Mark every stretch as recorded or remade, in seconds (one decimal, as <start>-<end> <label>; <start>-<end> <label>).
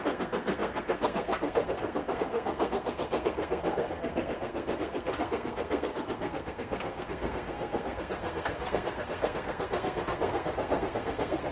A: 0.0-11.5 remade